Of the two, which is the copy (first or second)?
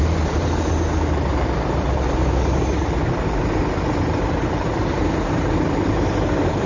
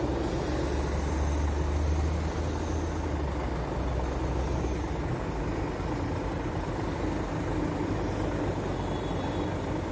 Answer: first